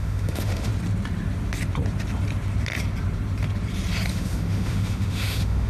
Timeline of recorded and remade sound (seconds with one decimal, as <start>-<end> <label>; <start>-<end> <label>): 0.0-0.7 remade; 0.7-4.1 recorded; 4.1-5.7 remade